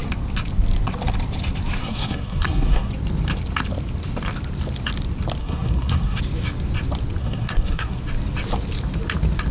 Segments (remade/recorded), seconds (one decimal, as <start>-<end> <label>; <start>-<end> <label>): 0.0-1.8 recorded; 1.8-2.9 remade; 2.9-5.4 recorded; 5.4-6.2 remade; 6.2-7.2 recorded; 7.2-8.0 remade; 8.0-9.5 recorded

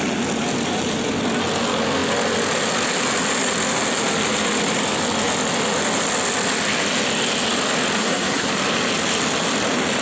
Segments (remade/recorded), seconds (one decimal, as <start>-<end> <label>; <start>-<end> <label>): 0.0-8.0 recorded; 8.0-8.5 remade; 8.5-10.0 recorded

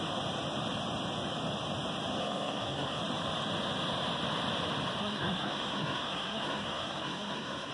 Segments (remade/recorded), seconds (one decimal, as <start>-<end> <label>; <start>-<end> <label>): 0.0-2.2 recorded; 2.2-3.0 remade; 3.0-5.0 recorded; 5.0-7.7 remade

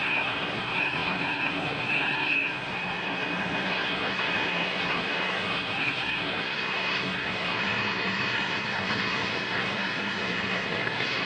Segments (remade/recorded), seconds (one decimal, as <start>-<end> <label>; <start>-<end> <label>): 0.0-11.3 remade

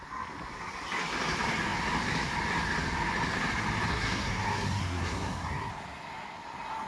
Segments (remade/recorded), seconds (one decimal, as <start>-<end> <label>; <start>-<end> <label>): 0.0-3.9 recorded; 3.9-5.7 remade; 5.7-6.9 recorded

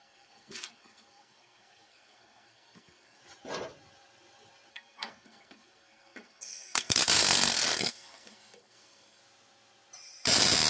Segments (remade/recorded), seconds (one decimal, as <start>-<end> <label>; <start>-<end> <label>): 0.0-3.2 remade; 3.2-4.7 recorded; 4.7-9.2 remade; 9.2-10.7 recorded